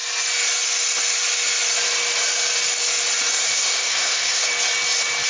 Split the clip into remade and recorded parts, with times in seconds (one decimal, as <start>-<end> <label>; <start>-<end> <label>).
0.0-3.4 recorded; 3.4-4.5 remade; 4.5-5.3 recorded